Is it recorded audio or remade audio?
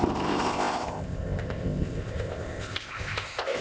remade